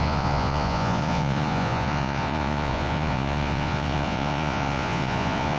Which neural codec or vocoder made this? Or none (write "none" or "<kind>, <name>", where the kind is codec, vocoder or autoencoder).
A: vocoder, Vocos